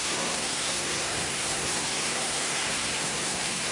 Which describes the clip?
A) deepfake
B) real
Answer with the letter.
A